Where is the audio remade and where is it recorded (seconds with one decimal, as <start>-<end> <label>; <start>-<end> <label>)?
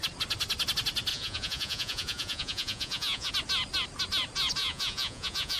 0.0-1.1 recorded; 1.1-3.3 remade; 3.3-4.6 recorded; 4.6-5.6 remade